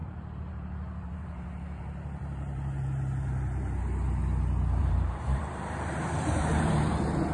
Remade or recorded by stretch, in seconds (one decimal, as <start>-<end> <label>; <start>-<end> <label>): 0.0-3.8 remade; 3.8-4.8 recorded; 4.8-6.7 remade; 6.7-7.3 recorded